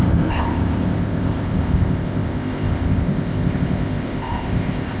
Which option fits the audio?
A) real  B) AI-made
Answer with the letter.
B